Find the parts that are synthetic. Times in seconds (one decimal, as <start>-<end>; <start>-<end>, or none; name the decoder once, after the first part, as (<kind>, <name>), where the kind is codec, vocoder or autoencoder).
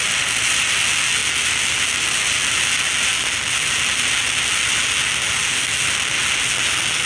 none